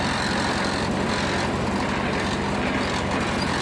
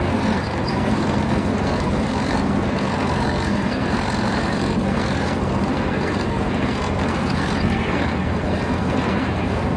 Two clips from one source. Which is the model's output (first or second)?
second